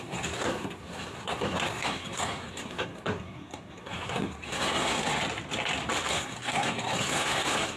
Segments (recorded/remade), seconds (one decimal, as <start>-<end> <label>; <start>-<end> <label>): 0.0-5.1 remade; 5.1-6.1 recorded; 6.1-7.8 remade